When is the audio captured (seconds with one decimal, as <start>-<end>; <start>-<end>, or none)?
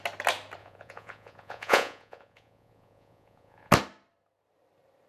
0.0-0.6; 3.7-5.1